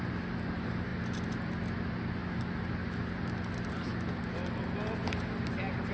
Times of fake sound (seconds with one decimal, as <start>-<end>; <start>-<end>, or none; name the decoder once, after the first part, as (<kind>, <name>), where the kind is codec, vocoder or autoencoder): none